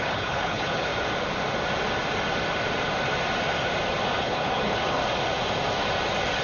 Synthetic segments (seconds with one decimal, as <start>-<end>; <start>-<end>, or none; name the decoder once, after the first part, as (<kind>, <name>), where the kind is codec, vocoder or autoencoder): 0.0-0.9 (codec, HILCodec); 4.2-5.0

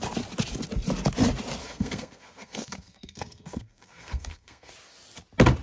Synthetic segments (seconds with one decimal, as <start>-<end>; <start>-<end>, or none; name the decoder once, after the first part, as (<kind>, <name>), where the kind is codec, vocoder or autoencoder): 1.6-4.7 (codec, SNAC)

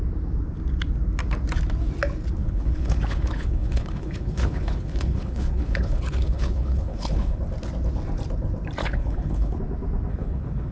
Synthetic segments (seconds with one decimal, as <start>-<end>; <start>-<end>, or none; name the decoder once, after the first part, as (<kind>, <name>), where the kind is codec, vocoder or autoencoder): 2.4-7.4 (codec, HILCodec); 8.8-9.5; 10.1-10.7

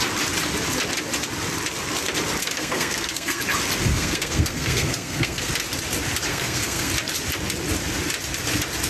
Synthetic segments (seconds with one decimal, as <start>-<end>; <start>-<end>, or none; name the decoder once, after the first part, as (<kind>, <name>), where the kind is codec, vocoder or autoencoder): 2.4-3.4 (codec, SNAC); 3.9-5.5; 6.3-6.9

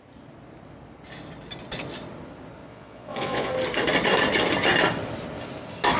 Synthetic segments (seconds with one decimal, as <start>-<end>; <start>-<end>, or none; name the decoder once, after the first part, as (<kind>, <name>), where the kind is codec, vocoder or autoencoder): 2.7-3.5 (vocoder, Vocos)

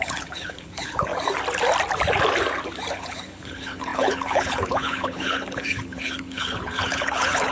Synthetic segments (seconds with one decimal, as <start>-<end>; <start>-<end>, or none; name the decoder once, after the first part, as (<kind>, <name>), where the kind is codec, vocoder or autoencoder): 0.0-1.1 (codec, HILCodec); 2.9-7.5

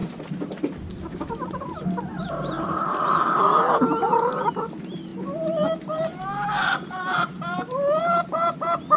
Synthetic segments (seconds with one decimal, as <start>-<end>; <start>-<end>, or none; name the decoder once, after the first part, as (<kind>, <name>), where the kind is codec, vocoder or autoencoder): 0.0-0.9 (vocoder, BigVGAN v2); 2.2-3.4; 5.1-8.0